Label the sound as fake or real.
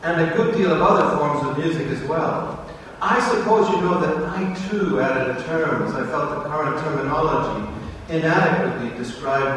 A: fake